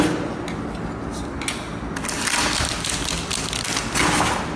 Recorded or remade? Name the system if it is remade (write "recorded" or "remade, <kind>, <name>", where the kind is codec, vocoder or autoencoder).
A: recorded